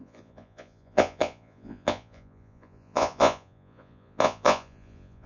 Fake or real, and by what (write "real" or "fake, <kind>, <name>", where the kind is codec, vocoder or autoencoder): fake, vocoder, Vocos